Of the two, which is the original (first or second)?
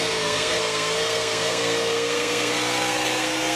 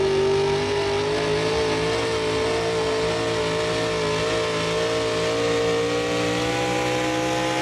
second